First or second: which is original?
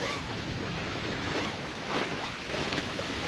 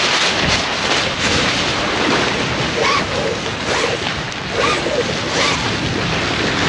second